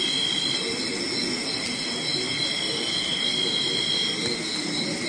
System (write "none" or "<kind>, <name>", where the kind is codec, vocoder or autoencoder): none